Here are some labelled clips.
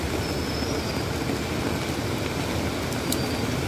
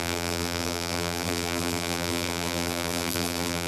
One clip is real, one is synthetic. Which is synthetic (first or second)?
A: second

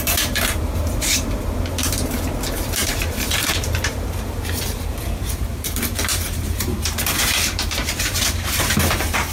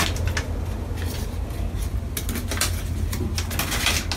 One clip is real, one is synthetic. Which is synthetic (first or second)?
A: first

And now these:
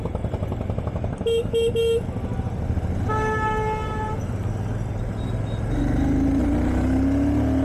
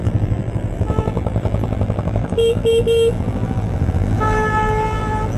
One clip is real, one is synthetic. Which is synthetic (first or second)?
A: second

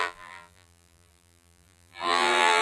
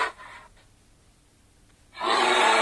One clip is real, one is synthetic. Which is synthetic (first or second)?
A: first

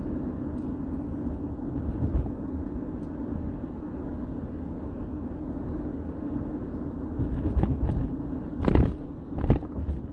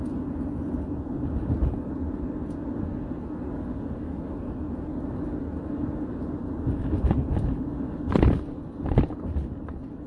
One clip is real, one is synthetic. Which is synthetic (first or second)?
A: second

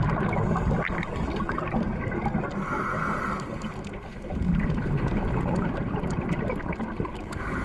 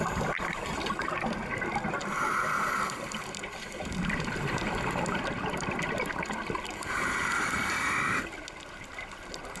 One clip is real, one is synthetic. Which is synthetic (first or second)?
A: second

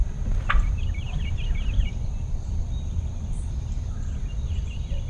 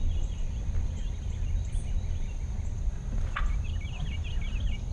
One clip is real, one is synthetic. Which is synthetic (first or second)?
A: first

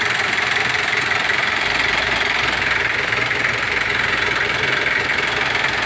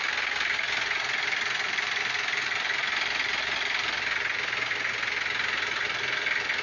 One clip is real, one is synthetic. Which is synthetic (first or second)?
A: first